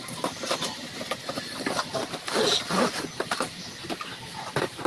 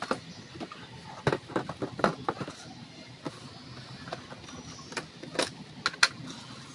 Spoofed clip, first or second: first